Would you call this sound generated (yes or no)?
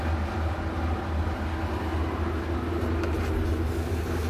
no